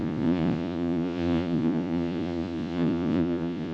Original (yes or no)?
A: no